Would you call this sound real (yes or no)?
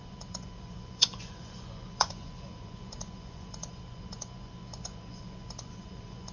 no